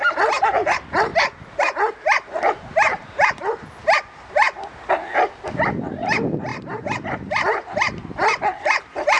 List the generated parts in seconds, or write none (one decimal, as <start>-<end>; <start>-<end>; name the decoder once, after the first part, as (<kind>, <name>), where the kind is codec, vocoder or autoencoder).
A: 6.5-9.2 (vocoder, BigVGAN v2)